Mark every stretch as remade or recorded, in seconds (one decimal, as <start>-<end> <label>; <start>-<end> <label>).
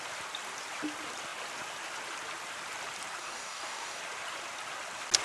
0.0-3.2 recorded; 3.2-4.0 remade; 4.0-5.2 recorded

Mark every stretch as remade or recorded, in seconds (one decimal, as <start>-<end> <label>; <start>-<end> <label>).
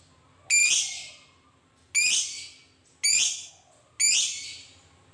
0.0-5.1 recorded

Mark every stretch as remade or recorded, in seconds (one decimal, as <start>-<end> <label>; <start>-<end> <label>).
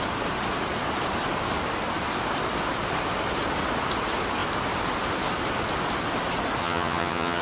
0.0-6.6 recorded; 6.6-7.4 remade